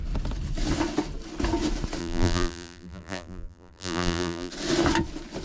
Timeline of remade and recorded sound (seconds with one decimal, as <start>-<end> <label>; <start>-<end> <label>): 0.0-2.0 recorded; 2.0-4.5 remade; 4.5-5.4 recorded